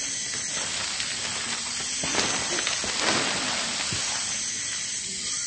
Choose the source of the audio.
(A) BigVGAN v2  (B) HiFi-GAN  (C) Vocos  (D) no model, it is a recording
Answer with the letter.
D